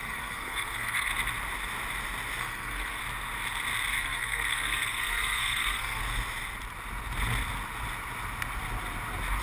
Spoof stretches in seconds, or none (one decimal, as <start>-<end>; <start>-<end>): 0.0-1.1; 2.4-3.0; 4.0-6.0